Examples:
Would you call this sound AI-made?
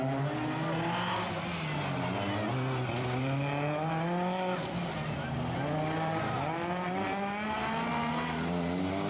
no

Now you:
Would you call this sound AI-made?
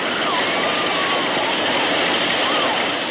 no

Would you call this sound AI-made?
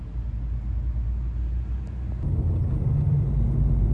no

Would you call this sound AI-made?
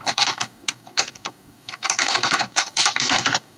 yes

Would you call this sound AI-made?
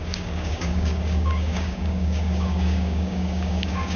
yes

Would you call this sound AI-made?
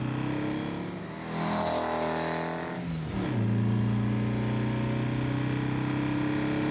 no